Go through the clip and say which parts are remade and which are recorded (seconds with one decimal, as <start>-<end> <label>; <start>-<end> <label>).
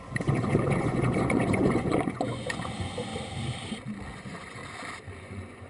0.0-3.1 remade; 3.1-4.1 recorded; 4.1-4.6 remade; 4.6-5.2 recorded; 5.2-5.7 remade